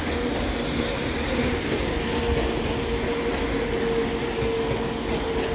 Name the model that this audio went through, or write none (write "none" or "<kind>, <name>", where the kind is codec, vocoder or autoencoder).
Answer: none